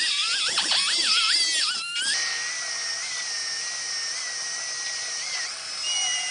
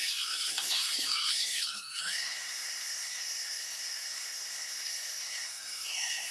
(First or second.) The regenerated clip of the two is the second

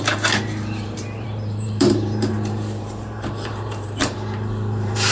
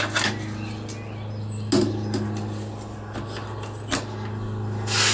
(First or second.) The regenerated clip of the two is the first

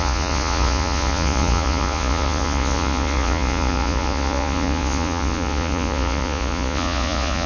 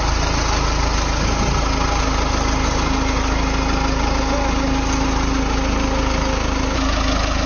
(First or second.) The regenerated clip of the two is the first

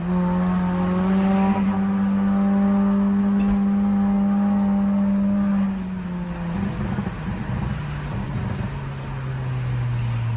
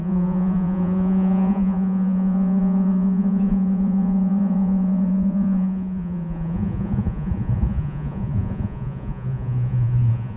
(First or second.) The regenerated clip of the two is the second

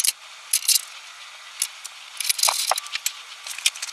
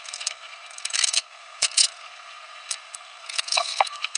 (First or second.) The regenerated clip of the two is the second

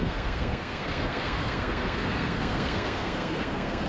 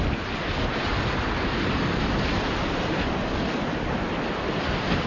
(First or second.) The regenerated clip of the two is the first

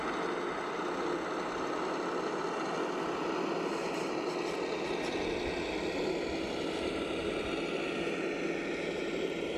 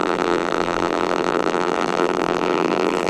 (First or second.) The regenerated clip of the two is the second